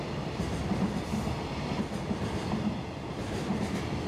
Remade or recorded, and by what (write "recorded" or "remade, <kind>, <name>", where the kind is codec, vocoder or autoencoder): recorded